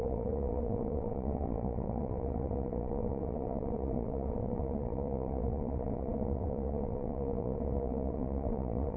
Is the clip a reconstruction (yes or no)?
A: yes